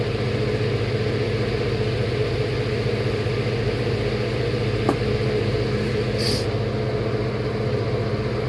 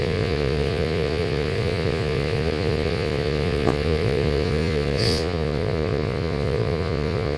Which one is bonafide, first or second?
first